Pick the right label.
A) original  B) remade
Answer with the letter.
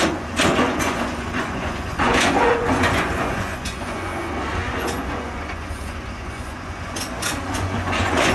B